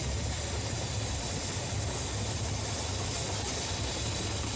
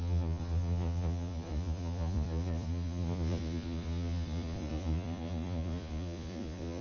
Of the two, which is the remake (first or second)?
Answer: second